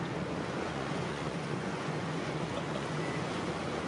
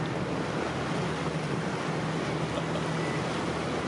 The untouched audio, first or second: second